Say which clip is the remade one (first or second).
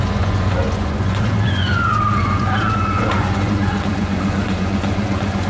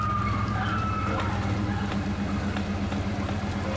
first